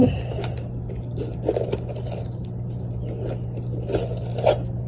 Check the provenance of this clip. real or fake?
real